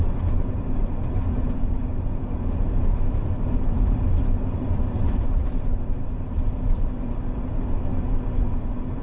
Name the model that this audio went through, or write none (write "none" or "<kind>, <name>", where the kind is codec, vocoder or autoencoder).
vocoder, BigVGAN v2